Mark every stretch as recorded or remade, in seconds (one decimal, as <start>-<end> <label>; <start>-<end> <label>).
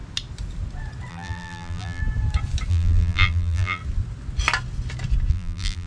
0.0-1.1 recorded; 1.1-2.0 remade; 2.0-2.7 recorded; 2.7-3.8 remade; 3.8-5.3 recorded; 5.3-5.9 remade